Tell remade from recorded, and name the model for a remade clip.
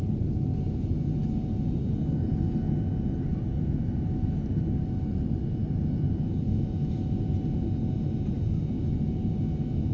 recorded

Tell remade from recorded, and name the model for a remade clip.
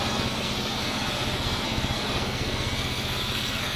remade, codec, SNAC